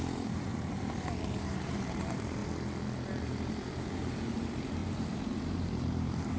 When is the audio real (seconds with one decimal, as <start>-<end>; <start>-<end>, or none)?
0.5-1.3; 2.4-3.2